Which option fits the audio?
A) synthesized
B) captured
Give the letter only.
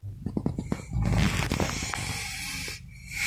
B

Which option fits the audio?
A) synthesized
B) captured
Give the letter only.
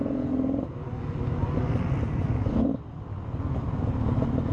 B